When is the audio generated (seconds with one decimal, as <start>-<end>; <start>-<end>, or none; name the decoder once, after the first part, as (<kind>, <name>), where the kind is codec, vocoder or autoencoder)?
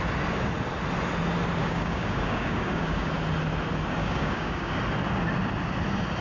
1.6-3.1 (codec, DAC); 4.0-4.8